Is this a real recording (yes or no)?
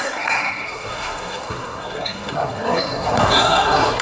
no